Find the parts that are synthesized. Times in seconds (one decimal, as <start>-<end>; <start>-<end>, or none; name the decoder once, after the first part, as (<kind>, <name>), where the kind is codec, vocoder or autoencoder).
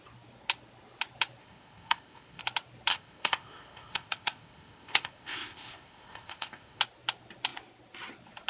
1.4-2.4 (codec, ZipCodec); 2.9-6.8